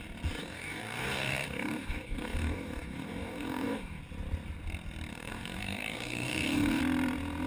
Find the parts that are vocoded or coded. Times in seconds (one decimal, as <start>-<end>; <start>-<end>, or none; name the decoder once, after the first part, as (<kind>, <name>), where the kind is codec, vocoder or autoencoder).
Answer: 0.4-4.0 (codec, DAC); 5.1-6.8